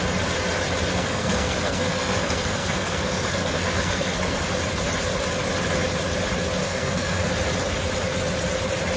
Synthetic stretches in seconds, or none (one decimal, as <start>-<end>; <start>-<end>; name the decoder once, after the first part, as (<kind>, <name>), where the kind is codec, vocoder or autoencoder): 0.9-4.4 (codec, SNAC); 6.6-7.3